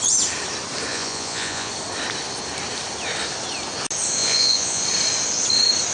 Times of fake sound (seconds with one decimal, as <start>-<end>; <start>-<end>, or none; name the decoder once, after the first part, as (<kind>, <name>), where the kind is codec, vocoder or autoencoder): 0.9-1.7 (vocoder, Vocos); 4.2-4.8